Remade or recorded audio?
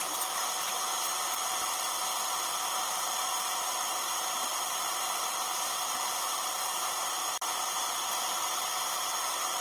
recorded